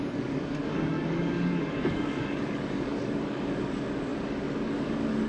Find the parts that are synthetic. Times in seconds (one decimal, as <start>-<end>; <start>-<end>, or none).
0.0-5.3